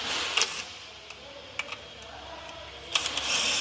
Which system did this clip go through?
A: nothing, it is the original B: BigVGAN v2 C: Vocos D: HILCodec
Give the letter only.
A